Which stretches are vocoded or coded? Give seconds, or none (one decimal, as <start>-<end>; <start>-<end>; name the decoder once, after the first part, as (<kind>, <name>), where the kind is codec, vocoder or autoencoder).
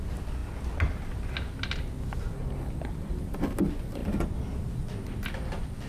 none